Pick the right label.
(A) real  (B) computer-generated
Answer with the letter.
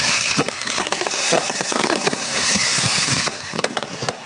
B